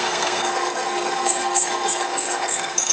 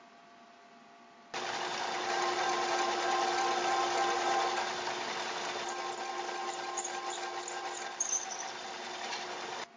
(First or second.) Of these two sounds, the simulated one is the first